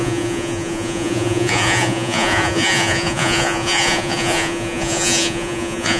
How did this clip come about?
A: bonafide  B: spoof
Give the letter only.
B